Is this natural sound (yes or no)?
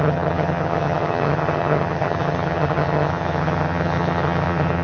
no